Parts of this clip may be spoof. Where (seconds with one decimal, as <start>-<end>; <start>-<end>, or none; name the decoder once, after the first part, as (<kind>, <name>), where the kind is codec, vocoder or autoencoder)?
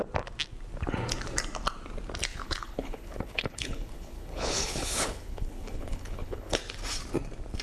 2.3-6.6 (codec, HILCodec)